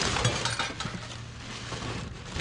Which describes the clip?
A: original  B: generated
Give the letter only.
A